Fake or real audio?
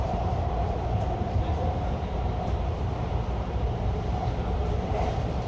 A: fake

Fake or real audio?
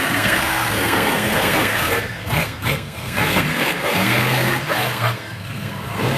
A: fake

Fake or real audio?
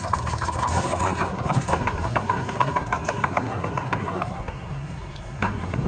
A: fake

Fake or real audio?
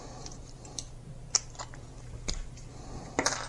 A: real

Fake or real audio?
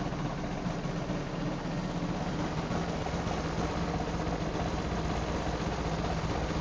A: real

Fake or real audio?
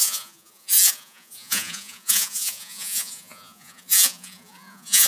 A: fake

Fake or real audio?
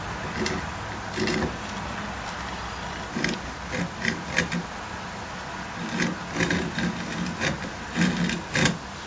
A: real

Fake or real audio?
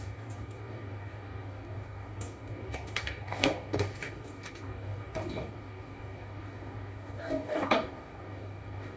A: fake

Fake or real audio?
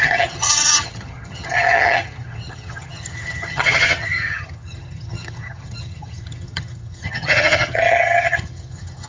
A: fake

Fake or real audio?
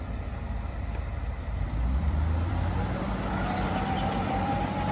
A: fake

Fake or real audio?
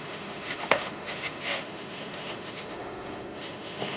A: fake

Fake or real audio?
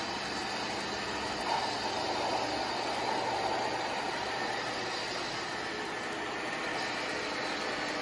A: real